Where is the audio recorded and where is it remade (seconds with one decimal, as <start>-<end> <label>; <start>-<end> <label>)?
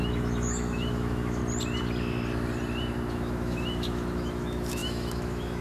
0.0-1.4 remade; 1.4-3.1 recorded; 3.1-5.6 remade